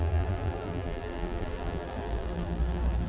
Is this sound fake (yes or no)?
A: yes